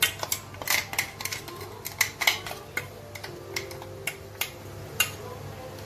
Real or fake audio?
real